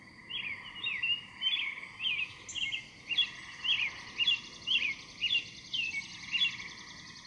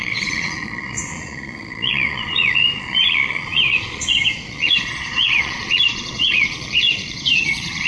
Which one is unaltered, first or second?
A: first